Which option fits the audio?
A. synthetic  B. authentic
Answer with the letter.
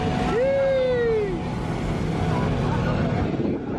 B